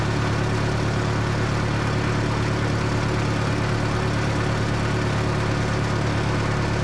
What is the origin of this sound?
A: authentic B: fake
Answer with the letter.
A